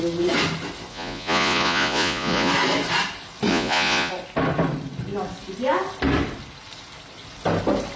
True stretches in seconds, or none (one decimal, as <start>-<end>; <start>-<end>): 0.0-0.9; 2.5-3.5; 4.1-8.0

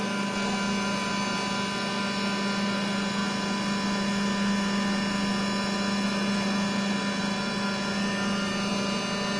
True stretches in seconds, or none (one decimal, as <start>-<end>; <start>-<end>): 0.0-9.4

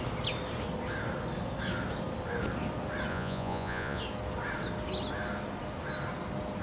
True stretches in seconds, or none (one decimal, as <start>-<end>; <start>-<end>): 0.0-3.1; 4.0-6.6

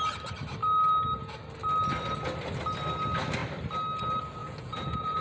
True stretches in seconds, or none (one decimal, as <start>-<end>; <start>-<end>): 0.0-4.4